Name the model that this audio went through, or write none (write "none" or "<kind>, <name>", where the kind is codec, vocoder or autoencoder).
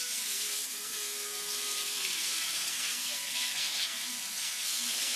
codec, SNAC